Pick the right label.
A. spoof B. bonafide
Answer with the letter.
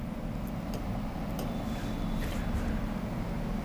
B